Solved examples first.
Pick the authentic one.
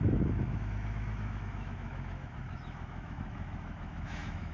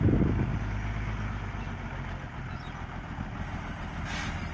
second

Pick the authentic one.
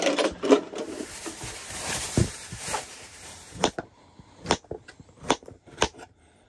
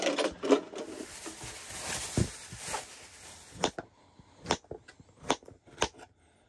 second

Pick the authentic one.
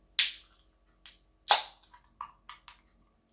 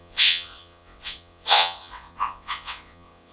first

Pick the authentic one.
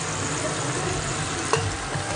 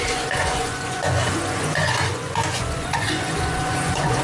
first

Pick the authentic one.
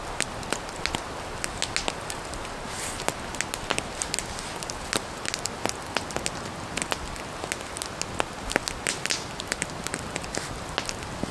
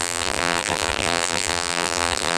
first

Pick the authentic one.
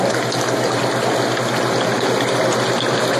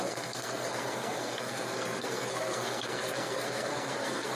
first